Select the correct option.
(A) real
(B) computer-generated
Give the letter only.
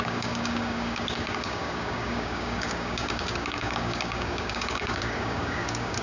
B